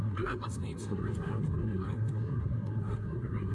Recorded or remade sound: remade